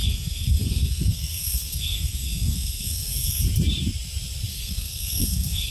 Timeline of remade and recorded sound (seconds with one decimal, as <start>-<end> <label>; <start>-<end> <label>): 0.0-3.4 remade; 3.4-4.5 recorded; 4.5-5.7 remade